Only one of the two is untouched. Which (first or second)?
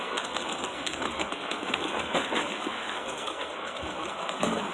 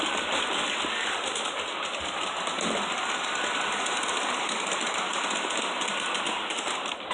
second